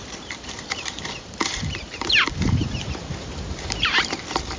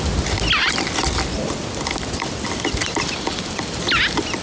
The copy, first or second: first